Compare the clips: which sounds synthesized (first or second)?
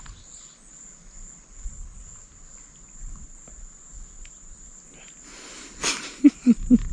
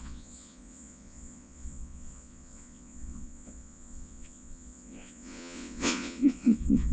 second